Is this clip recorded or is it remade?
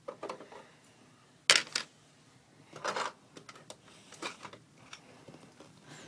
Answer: recorded